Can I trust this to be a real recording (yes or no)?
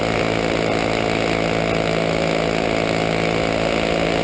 yes